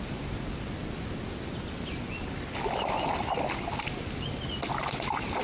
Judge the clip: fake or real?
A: real